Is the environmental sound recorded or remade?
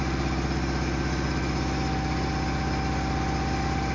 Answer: recorded